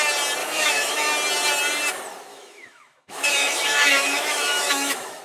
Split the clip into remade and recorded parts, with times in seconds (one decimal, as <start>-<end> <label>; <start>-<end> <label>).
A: 0.0-0.4 recorded; 0.4-1.1 remade; 1.1-2.3 recorded; 2.3-5.2 remade